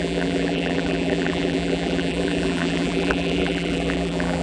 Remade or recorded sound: remade